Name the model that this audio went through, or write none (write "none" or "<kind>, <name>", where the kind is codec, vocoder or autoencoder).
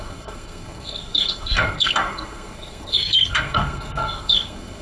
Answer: codec, SNAC